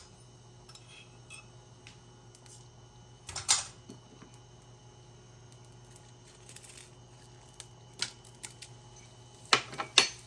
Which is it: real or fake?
real